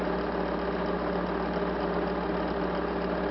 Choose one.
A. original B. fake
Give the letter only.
A